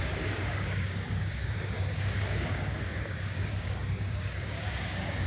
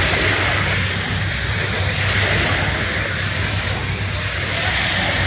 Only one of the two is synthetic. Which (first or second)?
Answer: first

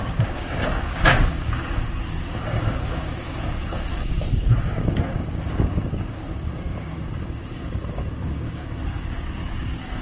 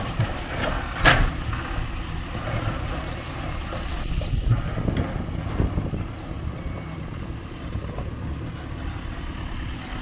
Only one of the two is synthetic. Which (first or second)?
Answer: first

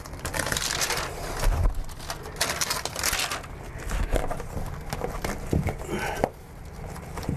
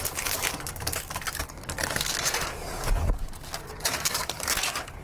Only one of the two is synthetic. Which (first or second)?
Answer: second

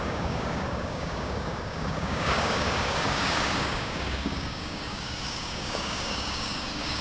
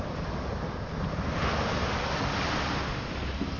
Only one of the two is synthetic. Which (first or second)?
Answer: first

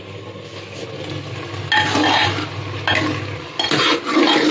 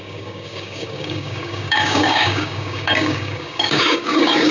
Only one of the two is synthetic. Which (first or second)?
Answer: second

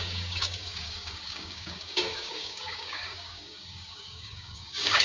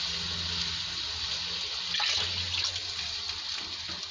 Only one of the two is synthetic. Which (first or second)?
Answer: first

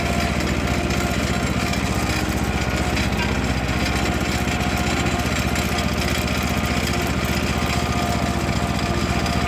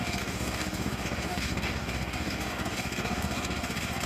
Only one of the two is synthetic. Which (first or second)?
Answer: second